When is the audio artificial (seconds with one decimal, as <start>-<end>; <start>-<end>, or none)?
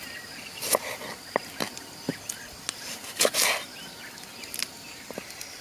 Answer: none